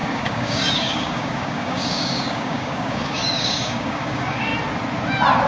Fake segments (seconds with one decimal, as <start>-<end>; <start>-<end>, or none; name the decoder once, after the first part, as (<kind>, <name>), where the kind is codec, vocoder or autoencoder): 0.0-4.5 (codec, DAC)